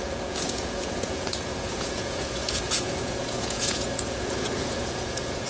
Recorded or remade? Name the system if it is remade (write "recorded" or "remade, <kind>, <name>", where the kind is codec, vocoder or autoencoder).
remade, vocoder, Vocos